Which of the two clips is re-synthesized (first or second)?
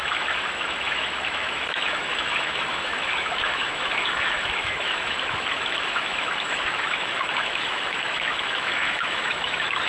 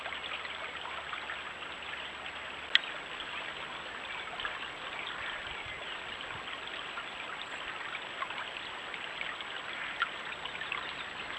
first